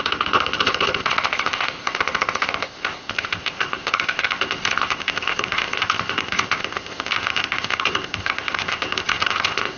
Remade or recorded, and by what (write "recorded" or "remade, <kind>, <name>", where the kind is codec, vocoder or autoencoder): remade, codec, ZipCodec